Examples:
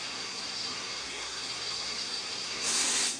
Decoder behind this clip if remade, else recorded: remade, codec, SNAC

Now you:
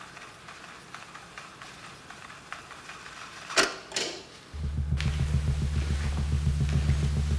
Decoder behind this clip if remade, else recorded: recorded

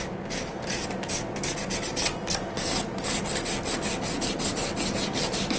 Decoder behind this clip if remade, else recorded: recorded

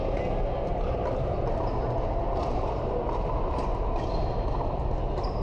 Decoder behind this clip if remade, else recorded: recorded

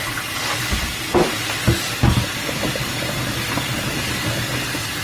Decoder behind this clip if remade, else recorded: recorded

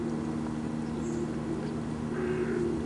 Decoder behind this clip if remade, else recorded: recorded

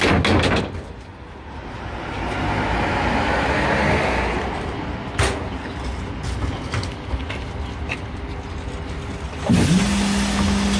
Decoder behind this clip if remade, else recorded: recorded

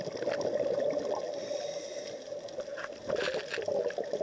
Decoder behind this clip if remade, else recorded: recorded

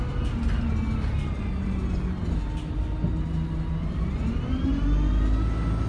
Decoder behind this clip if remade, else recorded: recorded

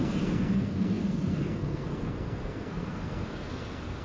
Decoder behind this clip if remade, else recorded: remade, codec, SNAC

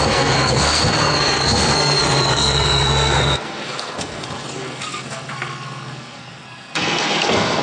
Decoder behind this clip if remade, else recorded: remade, codec, SNAC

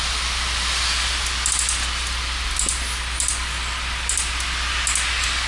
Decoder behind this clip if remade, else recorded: recorded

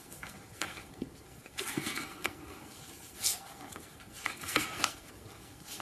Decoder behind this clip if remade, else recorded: remade, codec, SNAC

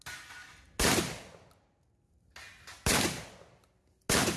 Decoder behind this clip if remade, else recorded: recorded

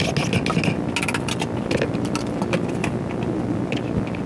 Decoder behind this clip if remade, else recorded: recorded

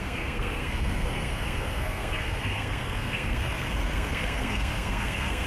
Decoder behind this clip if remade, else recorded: remade, codec, SNAC